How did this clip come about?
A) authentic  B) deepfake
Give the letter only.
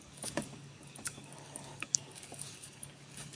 B